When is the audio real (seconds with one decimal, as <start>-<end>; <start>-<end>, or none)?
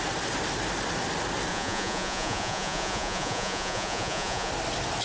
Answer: 0.0-1.5; 4.5-5.0